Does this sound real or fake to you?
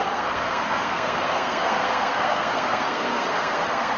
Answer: fake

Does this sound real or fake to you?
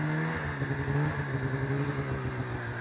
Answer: real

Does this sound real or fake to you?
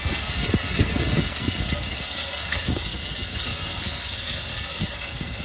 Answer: fake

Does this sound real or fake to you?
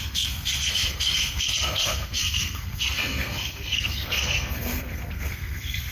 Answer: fake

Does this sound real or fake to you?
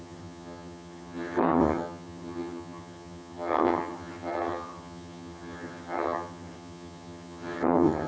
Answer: fake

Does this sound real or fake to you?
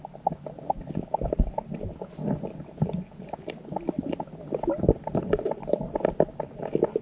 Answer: real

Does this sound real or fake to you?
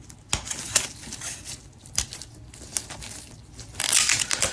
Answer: real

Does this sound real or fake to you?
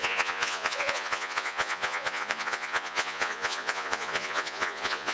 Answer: fake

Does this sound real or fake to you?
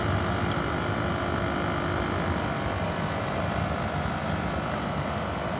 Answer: real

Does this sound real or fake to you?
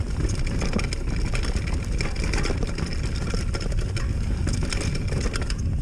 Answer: real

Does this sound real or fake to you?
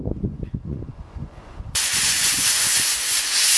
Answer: fake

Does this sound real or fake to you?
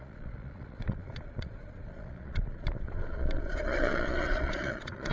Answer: fake